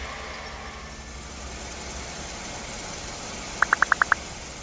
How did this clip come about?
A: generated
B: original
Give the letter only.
B